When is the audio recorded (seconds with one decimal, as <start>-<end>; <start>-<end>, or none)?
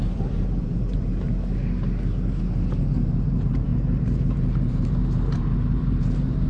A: 1.3-2.8